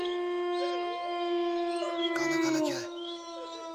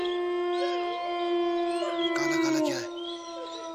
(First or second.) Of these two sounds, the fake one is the first